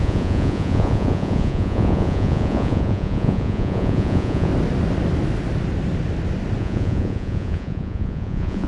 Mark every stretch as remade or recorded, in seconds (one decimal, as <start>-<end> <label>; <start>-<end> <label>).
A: 0.0-4.5 remade; 4.5-6.6 recorded; 6.6-8.7 remade